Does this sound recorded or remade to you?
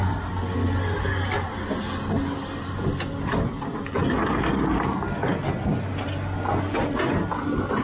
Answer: recorded